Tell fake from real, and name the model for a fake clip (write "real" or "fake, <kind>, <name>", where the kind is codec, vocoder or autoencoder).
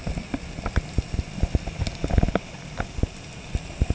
real